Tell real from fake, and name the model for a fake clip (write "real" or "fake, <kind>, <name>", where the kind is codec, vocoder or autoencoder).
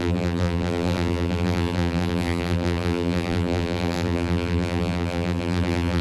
fake, vocoder, BigVGAN v2